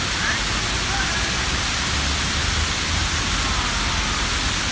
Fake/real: real